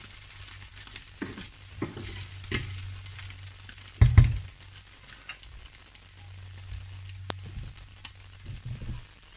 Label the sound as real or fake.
real